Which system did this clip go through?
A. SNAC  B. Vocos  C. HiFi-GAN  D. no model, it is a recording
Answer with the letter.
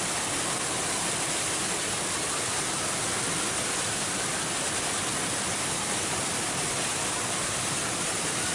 D